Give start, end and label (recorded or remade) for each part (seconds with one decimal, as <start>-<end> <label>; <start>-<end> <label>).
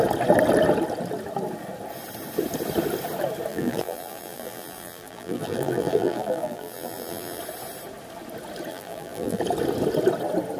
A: 0.0-3.5 recorded; 3.5-7.4 remade; 7.4-8.7 recorded; 8.7-9.4 remade; 9.4-10.6 recorded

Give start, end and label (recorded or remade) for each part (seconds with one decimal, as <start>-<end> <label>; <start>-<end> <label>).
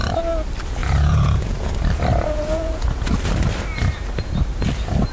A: 0.0-0.8 recorded; 0.8-1.7 remade; 1.7-2.1 recorded; 2.1-3.1 remade; 3.1-5.1 recorded